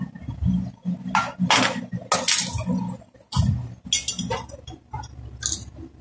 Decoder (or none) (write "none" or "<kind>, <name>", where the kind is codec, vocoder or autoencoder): none